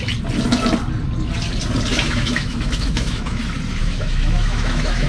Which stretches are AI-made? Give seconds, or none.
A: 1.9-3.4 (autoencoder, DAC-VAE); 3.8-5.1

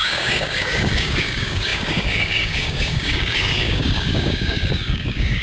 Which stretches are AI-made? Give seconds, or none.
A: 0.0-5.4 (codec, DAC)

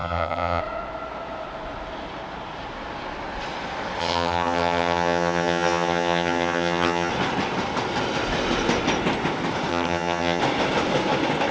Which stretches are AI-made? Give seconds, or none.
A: 0.0-0.6 (vocoder, HiFi-GAN); 4.0-7.1; 9.7-10.4